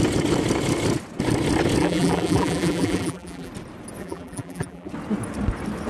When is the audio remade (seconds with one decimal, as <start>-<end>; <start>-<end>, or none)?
1.8-3.5; 4.0-4.9